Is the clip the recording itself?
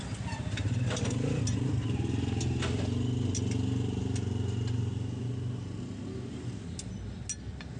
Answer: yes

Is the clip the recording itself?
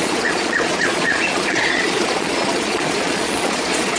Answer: no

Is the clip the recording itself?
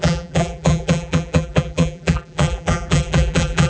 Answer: no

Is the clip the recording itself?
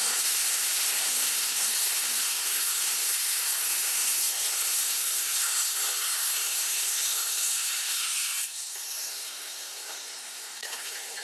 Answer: no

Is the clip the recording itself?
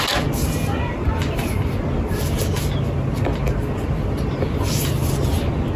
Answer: yes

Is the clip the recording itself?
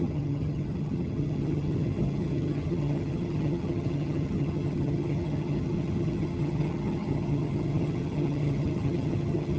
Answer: no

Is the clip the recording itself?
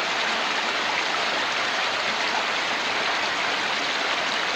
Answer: yes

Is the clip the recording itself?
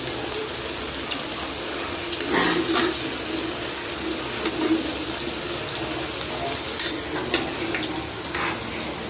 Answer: yes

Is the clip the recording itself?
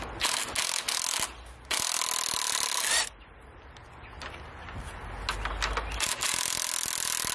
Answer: yes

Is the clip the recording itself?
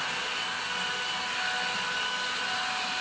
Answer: yes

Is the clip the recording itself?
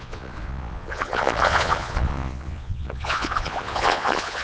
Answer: no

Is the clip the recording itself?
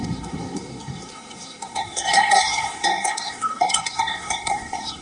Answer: no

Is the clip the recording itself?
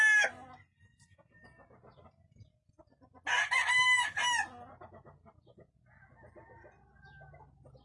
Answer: yes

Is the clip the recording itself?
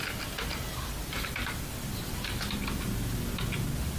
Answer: yes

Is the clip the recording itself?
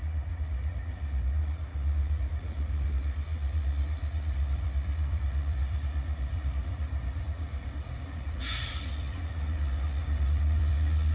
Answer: no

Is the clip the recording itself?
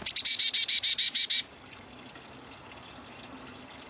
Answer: yes